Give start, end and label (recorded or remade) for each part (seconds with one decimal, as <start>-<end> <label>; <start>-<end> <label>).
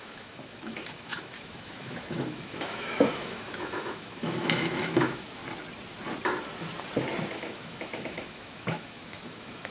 0.0-5.4 remade; 5.4-7.3 recorded; 7.3-9.7 remade